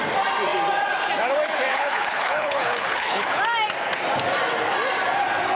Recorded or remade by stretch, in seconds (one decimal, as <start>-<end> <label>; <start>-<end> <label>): 0.0-1.7 recorded; 1.7-3.4 remade; 3.4-5.5 recorded